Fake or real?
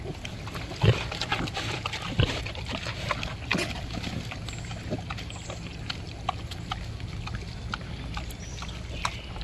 real